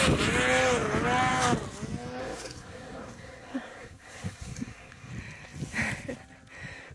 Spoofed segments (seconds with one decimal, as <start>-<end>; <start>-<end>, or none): 2.2-5.1